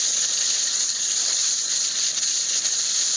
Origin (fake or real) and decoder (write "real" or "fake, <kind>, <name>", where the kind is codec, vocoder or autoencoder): real